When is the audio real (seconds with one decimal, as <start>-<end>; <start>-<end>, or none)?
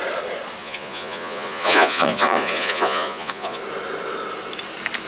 0.0-0.6; 3.6-5.1